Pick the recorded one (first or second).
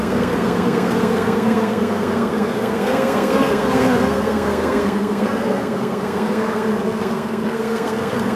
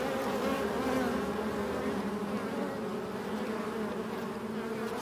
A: second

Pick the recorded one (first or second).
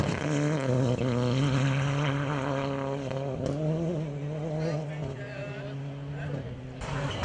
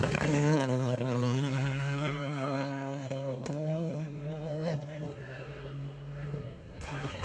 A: first